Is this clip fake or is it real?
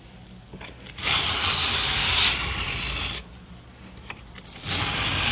real